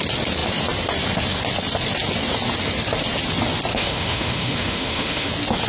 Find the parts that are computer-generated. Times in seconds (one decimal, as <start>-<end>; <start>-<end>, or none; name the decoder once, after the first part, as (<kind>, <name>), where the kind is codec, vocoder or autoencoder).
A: 3.7-5.3 (autoencoder, DAC-VAE)